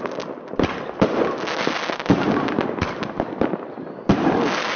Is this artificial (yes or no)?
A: no